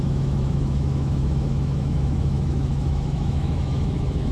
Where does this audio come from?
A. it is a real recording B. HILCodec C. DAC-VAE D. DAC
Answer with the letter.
C